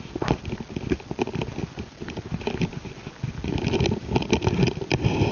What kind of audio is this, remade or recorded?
recorded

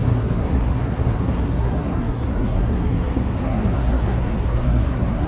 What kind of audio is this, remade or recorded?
remade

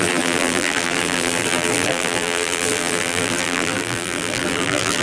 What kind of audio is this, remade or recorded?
remade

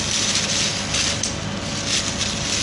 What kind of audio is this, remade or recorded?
recorded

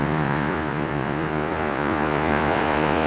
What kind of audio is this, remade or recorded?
remade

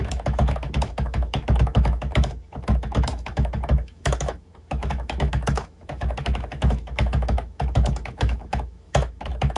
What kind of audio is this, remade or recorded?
remade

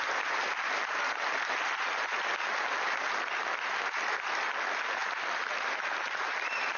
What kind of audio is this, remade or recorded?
recorded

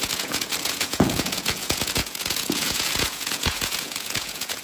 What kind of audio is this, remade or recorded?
remade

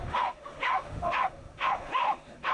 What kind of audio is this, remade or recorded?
remade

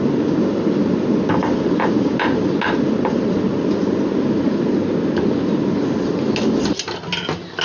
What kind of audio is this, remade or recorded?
recorded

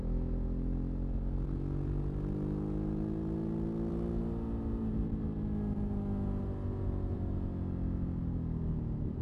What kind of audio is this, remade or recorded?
recorded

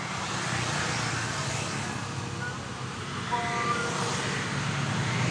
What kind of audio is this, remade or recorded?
recorded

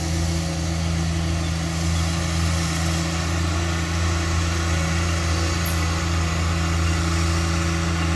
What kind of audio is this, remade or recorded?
recorded